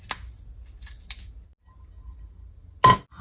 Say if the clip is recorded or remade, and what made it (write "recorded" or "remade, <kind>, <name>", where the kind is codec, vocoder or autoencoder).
recorded